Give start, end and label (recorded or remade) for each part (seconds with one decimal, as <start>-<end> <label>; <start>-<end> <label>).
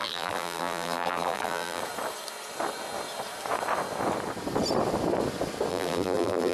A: 0.0-1.8 remade; 1.8-5.7 recorded; 5.7-6.5 remade